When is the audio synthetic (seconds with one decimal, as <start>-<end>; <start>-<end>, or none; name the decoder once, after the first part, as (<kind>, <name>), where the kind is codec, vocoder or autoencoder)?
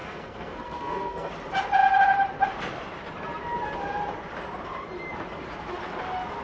0.0-1.3 (codec, SNAC)